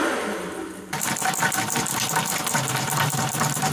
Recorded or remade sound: recorded